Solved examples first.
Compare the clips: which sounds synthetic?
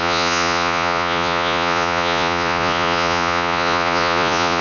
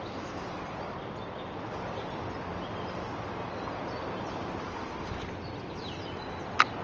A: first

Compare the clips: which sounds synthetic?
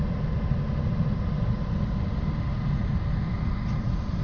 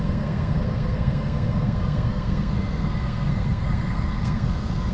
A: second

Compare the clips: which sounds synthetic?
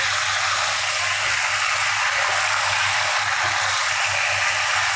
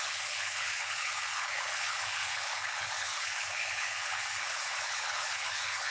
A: second